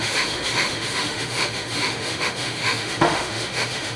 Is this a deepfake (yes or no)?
yes